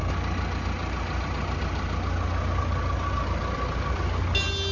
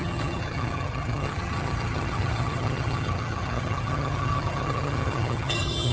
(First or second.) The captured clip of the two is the first